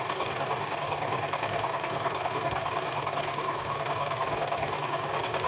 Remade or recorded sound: remade